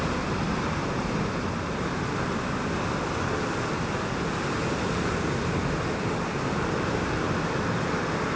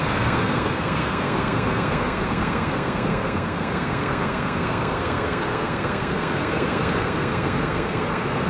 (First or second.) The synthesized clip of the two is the second